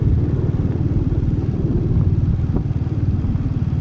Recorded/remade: recorded